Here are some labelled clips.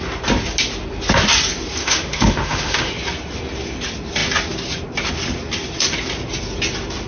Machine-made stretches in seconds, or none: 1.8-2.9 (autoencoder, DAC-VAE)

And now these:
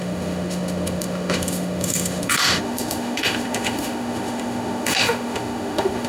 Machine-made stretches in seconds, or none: 0.0-6.1 (autoencoder, DAC-VAE)